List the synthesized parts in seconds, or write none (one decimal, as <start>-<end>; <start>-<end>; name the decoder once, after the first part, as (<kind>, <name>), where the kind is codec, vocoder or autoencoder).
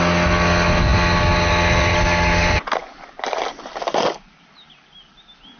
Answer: none